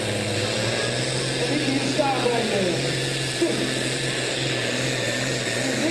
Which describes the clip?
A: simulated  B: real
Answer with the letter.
B